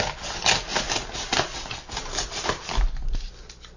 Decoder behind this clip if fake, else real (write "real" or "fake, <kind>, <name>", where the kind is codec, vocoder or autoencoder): real